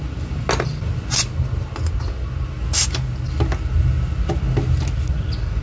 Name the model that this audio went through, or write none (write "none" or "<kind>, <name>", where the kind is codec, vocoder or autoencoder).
none